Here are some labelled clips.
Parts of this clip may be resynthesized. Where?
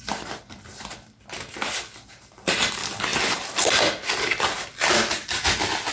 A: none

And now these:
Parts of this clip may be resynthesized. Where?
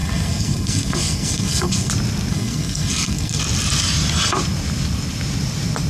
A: 0.0-1.9 (codec, SNAC); 2.3-3.4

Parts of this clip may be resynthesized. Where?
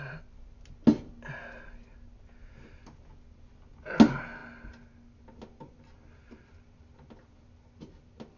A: none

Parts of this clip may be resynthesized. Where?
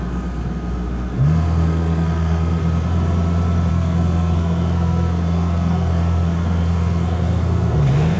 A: 0.0-2.6 (codec, SNAC); 3.7-8.2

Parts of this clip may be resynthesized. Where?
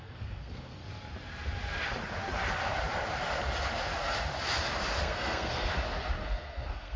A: 0.0-0.8 (codec, SNAC); 5.0-5.7; 6.2-7.0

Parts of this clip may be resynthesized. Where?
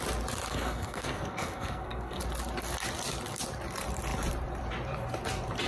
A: 0.5-2.2 (codec, SNAC)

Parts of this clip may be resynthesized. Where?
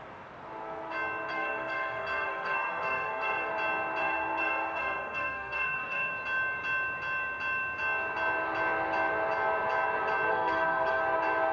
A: 1.3-3.5 (codec, SNAC); 4.0-6.1; 10.3-11.0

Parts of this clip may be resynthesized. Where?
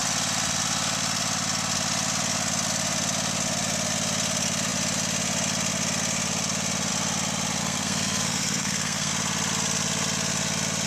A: 7.6-9.1 (codec, SNAC)